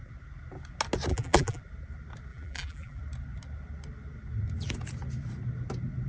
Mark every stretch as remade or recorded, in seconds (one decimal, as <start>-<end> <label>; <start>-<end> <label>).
0.0-1.1 recorded; 1.1-1.6 remade; 1.6-2.3 recorded; 2.3-3.0 remade; 3.0-6.1 recorded